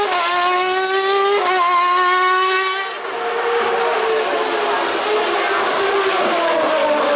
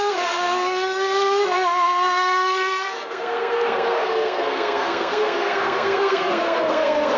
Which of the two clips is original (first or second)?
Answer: first